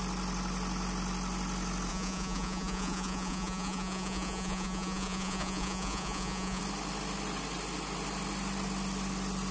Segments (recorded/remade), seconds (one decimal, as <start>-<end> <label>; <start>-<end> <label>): 0.0-1.9 recorded; 1.9-6.6 remade; 6.6-9.5 recorded